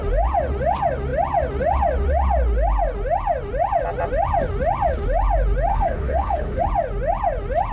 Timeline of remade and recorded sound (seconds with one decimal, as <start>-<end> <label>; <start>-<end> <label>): 0.0-5.7 recorded; 5.7-6.6 remade; 6.6-7.7 recorded